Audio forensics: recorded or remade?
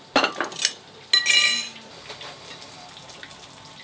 recorded